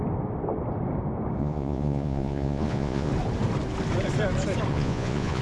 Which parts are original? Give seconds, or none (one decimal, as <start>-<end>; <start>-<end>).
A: 0.0-1.4; 3.1-4.7